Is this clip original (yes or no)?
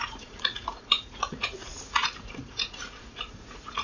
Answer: no